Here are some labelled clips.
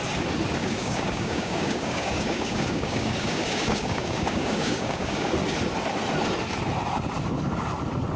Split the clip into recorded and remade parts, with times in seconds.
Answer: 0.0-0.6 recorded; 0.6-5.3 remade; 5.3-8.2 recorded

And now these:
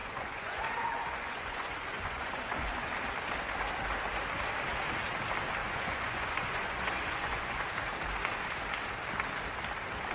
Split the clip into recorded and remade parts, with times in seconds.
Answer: 0.0-2.9 remade; 2.9-5.6 recorded; 5.6-7.6 remade; 7.6-10.1 recorded

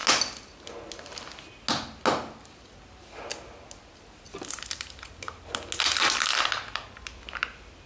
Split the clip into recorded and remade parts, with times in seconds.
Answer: 0.0-7.9 recorded

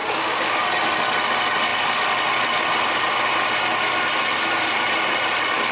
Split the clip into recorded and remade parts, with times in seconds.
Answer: 0.0-0.6 remade; 0.6-5.7 recorded